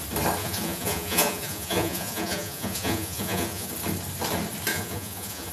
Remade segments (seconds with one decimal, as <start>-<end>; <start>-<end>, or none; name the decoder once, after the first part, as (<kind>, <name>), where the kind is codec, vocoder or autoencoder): 0.4-3.7 (vocoder, Vocos); 4.7-5.5